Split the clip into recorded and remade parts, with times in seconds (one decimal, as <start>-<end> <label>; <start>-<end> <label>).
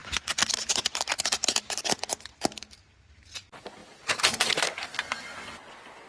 0.0-1.9 remade; 1.9-3.8 recorded; 3.8-4.5 remade; 4.5-6.1 recorded